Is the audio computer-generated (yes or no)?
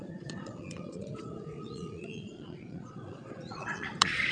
yes